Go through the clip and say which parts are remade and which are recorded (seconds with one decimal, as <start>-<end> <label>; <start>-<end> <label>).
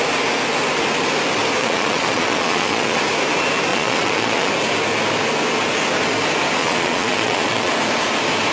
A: 0.0-1.6 recorded; 1.6-3.0 remade; 3.0-3.7 recorded; 3.7-4.5 remade; 4.5-6.6 recorded; 6.6-7.7 remade; 7.7-8.5 recorded